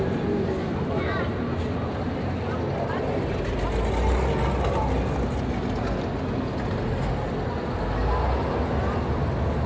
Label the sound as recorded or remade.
recorded